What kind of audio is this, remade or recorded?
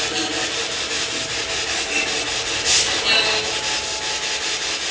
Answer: recorded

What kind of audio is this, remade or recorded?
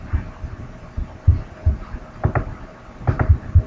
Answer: recorded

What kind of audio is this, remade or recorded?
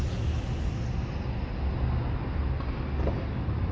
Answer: recorded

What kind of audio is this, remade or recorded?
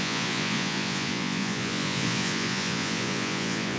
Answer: remade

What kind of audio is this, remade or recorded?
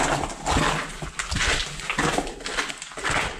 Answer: recorded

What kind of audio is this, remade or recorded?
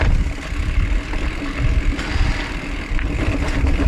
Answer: recorded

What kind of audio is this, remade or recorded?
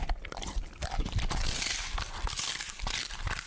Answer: recorded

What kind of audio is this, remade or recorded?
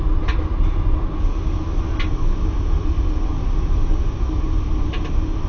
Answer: recorded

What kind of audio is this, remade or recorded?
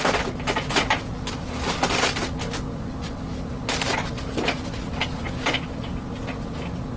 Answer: recorded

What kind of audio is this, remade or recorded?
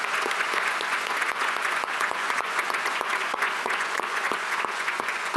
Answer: remade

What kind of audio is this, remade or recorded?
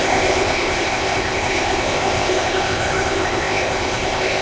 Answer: remade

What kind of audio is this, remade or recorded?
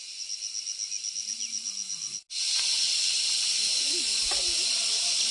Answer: recorded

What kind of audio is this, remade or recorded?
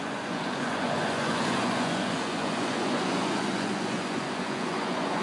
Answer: remade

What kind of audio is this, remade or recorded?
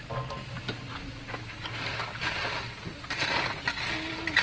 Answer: recorded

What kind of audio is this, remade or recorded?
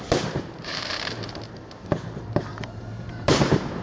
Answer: remade